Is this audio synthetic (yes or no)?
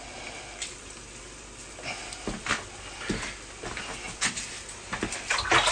no